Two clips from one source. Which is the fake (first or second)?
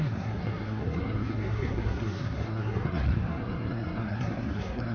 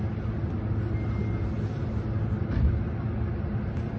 first